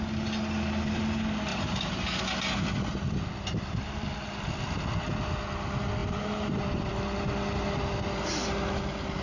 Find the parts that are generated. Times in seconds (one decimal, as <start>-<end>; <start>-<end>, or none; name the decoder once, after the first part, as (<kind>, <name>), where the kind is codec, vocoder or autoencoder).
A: 1.5-2.2 (vocoder, BigVGAN v2); 6.0-6.9